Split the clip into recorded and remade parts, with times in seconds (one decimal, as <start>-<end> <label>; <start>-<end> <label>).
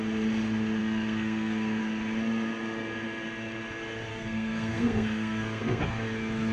0.0-0.8 recorded; 0.8-1.8 remade; 1.8-4.1 recorded; 4.1-5.8 remade; 5.8-6.5 recorded